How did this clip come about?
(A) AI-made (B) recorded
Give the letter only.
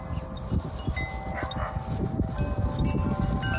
B